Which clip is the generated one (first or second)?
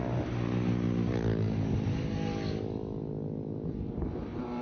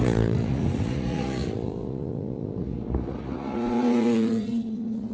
second